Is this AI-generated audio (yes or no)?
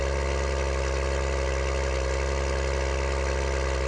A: no